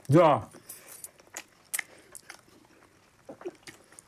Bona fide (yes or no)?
yes